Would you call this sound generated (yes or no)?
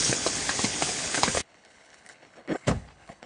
yes